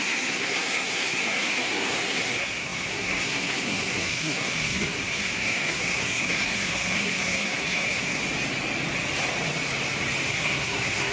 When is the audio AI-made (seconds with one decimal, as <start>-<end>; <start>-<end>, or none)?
0.0-8.2; 10.3-11.1